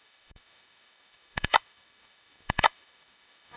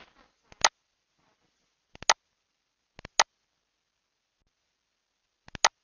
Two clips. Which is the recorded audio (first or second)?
second